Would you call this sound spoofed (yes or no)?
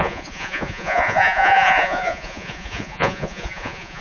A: yes